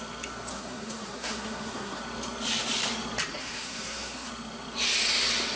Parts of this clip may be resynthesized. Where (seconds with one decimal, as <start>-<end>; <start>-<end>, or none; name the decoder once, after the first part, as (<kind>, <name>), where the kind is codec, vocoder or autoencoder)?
0.5-2.0 (codec, SNAC); 3.4-4.3